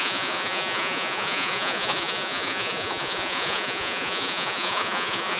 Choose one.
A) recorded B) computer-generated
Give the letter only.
B